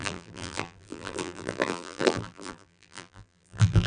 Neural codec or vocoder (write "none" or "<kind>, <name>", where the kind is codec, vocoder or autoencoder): vocoder, BigVGAN v2